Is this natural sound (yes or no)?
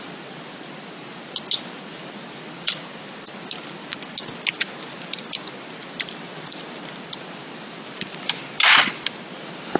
yes